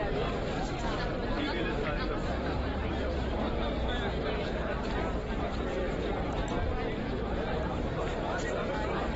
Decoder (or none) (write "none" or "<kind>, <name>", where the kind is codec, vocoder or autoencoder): vocoder, BigVGAN v2